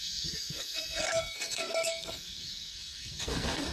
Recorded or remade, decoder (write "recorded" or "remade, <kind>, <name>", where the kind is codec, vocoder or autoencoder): remade, codec, SNAC